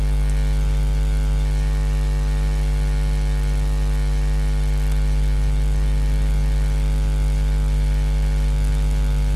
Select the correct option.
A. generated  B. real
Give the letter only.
B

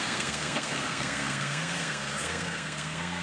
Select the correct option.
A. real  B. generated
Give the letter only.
B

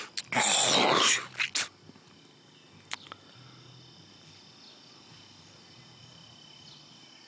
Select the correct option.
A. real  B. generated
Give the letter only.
A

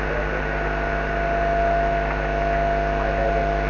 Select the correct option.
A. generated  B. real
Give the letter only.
B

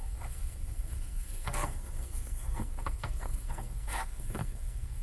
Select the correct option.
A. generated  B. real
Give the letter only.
A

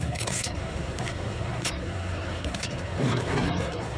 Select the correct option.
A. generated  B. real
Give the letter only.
A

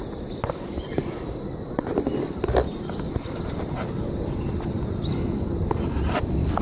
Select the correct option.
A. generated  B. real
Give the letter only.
B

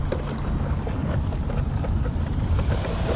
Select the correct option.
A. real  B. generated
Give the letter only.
A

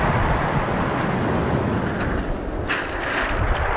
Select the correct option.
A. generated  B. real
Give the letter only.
B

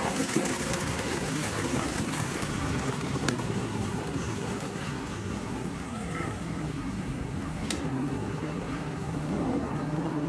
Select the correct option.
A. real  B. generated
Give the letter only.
B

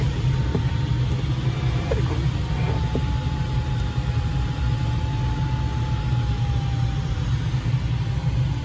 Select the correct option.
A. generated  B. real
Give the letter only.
B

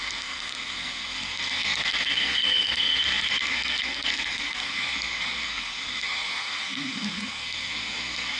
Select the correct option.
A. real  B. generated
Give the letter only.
B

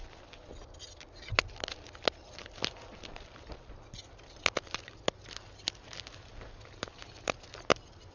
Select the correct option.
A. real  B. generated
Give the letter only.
A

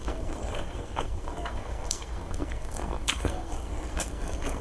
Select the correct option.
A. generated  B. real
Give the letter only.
A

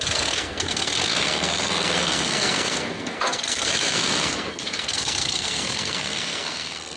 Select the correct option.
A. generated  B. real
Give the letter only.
A